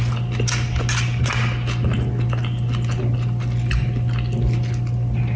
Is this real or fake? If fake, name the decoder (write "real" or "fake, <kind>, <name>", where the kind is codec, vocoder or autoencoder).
real